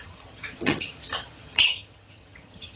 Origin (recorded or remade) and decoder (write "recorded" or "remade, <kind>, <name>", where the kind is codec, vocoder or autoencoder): remade, vocoder, HiFi-GAN